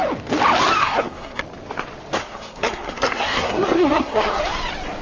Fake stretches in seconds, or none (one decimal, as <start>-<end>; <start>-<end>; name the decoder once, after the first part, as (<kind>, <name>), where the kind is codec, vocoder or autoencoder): 0.8-1.4 (codec, SNAC); 2.2-4.4